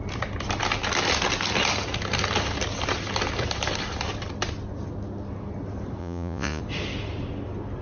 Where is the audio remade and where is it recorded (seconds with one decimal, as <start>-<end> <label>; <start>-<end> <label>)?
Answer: 0.0-6.0 recorded; 6.0-6.6 remade; 6.6-7.8 recorded